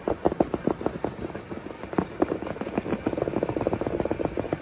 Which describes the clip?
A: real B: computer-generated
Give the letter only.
A